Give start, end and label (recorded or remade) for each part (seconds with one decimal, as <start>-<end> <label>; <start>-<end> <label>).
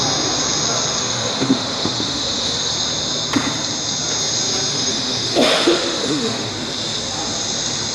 0.0-1.0 recorded; 1.0-2.7 remade; 2.7-4.7 recorded; 4.7-6.5 remade; 6.5-7.9 recorded